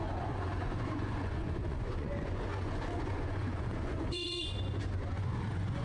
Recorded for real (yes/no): no